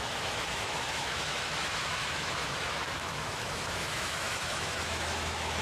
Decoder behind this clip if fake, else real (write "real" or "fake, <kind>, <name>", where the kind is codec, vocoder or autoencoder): fake, autoencoder, DAC-VAE